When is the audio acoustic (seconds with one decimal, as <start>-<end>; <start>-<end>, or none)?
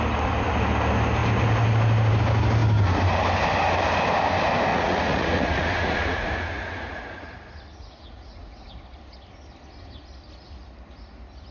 0.0-4.7; 8.7-11.5